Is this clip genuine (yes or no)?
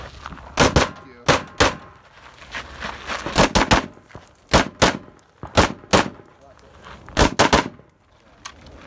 yes